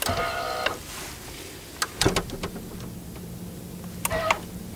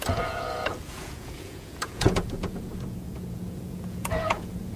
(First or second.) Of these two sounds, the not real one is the second